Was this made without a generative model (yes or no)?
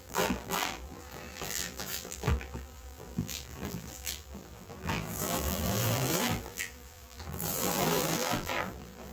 no